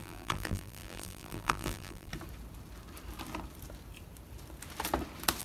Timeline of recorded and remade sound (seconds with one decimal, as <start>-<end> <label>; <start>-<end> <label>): 0.0-2.1 remade; 2.1-5.4 recorded